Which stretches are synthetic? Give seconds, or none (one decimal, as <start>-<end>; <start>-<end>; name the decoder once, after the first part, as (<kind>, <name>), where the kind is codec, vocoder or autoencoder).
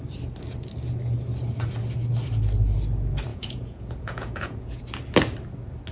3.3-4.8 (vocoder, Vocos)